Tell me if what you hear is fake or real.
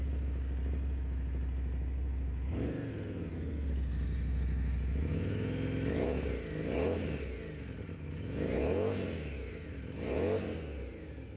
real